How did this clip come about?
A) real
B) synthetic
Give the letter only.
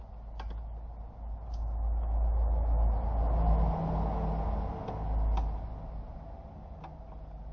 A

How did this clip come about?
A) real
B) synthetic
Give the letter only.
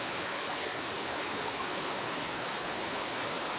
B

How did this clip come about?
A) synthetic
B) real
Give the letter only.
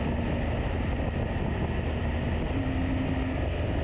B